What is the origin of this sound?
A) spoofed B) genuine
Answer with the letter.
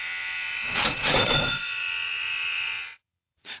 A